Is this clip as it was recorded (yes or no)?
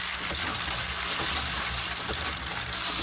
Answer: yes